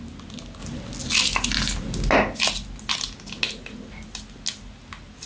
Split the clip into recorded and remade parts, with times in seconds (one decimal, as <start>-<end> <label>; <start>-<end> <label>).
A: 0.0-5.3 recorded